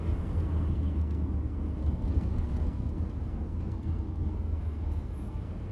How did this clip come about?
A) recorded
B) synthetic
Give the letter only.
B